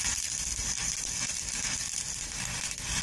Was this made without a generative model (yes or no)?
no